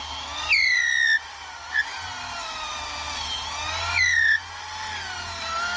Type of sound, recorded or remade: recorded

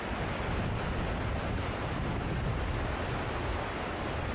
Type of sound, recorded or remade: recorded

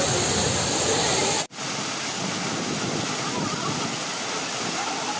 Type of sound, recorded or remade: recorded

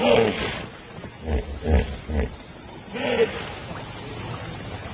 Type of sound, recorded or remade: recorded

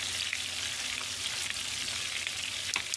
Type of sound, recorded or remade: recorded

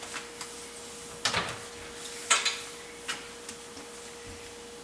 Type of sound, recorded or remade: recorded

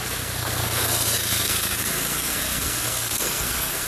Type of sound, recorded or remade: remade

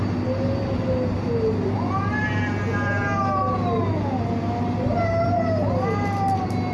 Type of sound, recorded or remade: recorded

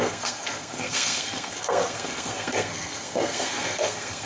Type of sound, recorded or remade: remade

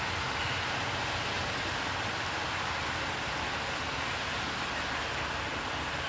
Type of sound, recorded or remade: recorded